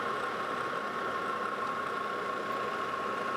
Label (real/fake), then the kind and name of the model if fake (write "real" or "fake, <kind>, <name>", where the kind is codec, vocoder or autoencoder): real